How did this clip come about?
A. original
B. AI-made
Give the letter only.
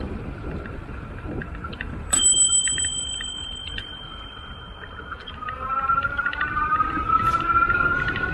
B